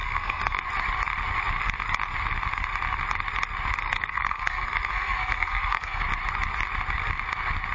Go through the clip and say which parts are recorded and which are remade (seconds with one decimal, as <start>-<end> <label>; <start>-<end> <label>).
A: 0.0-0.6 remade; 0.6-3.8 recorded; 3.8-6.0 remade; 6.0-7.7 recorded